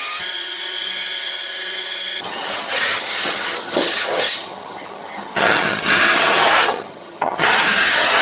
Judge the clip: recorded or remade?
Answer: remade